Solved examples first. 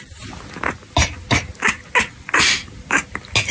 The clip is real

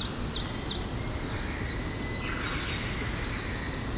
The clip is real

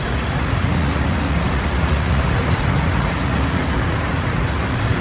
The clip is fake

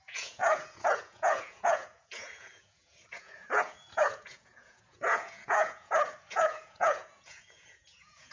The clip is fake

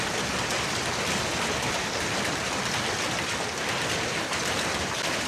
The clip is real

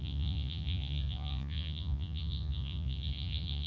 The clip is fake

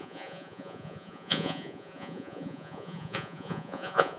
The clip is fake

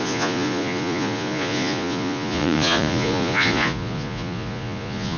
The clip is fake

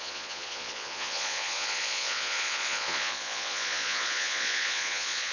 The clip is fake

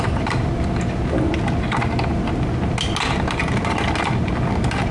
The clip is real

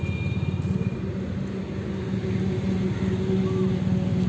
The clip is real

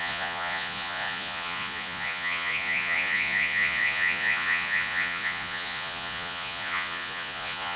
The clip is fake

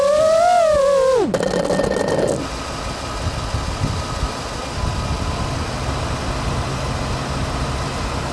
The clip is real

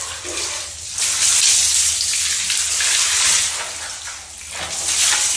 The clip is real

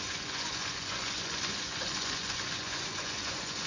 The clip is fake